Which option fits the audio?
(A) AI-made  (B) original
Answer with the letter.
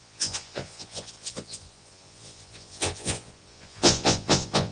A